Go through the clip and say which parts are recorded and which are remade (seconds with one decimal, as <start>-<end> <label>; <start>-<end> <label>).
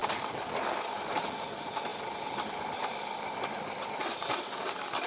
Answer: 0.0-5.1 recorded